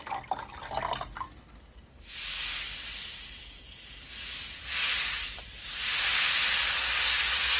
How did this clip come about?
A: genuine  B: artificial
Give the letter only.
A